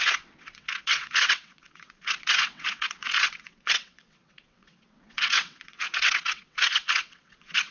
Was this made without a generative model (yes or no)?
no